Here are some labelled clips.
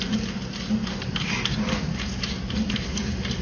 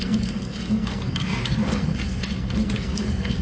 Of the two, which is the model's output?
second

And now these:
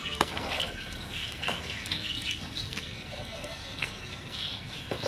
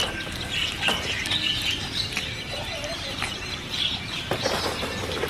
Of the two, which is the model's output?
first